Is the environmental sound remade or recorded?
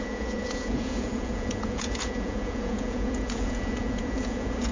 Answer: remade